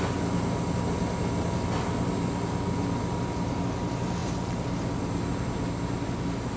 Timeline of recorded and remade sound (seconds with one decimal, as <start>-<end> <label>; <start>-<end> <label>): 0.0-6.6 recorded